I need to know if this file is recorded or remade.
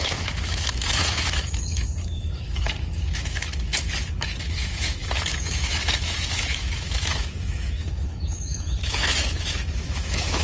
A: remade